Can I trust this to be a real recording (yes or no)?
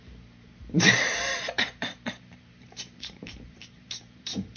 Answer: no